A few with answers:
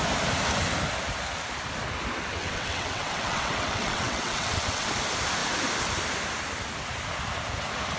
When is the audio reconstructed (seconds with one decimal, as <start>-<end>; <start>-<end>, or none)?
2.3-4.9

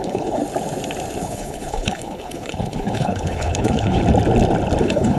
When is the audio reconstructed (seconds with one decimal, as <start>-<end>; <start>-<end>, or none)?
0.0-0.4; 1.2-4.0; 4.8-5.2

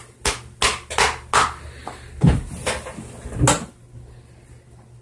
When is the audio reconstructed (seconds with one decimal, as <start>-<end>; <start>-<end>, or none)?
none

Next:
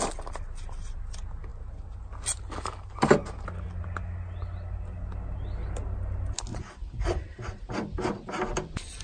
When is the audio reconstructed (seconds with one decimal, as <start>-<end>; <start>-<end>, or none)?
6.5-7.7